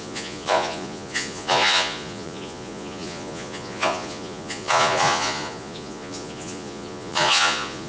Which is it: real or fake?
fake